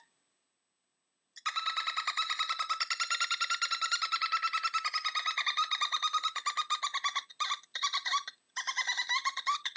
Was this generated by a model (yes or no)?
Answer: no